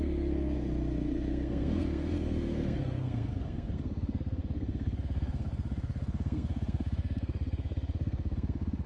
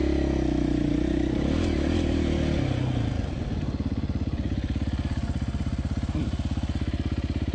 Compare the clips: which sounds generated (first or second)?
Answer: first